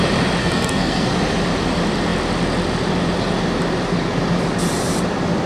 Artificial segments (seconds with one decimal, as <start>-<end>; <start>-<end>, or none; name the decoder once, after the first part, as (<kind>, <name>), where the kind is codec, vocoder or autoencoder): 0.4-1.1 (codec, SNAC)

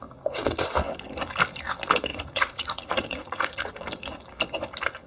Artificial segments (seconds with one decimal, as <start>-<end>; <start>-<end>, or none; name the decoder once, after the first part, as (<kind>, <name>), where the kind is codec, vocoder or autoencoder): 2.1-3.7 (vocoder, Vocos)